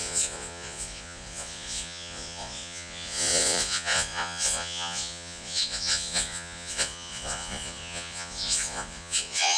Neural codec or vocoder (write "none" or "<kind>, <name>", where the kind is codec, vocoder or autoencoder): vocoder, Vocos